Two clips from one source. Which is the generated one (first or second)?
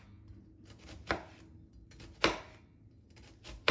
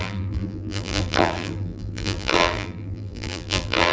second